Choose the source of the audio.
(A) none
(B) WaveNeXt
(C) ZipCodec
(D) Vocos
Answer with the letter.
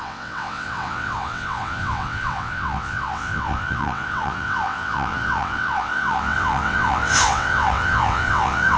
B